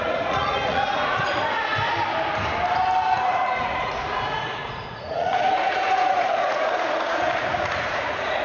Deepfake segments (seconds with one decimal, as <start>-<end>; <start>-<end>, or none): 0.0-1.7; 3.1-8.4